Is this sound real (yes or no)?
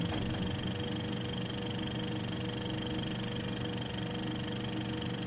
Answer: yes